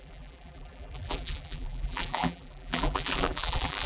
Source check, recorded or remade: remade